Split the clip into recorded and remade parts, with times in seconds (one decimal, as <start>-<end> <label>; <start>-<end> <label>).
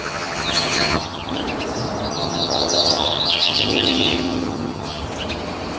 0.0-1.4 remade; 1.4-2.1 recorded; 2.1-5.0 remade; 5.0-5.8 recorded